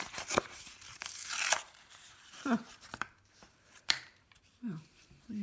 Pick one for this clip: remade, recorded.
remade